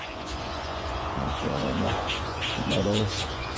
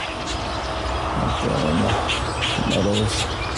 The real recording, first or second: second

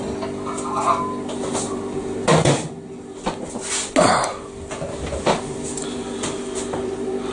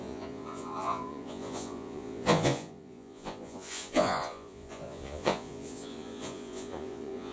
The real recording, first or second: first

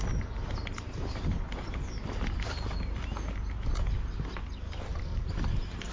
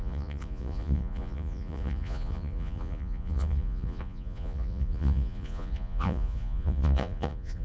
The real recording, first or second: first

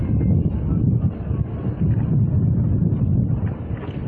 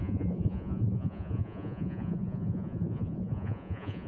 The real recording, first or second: first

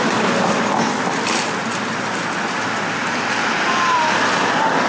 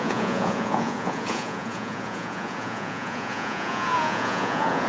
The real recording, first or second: first